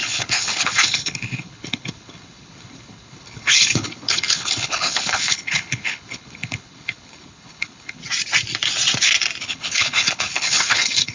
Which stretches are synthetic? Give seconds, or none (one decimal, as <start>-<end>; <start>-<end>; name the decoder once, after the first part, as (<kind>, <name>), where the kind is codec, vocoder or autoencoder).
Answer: 0.0-8.0 (codec, HILCodec); 9.4-11.1